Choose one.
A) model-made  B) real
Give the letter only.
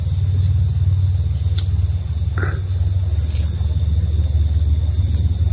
B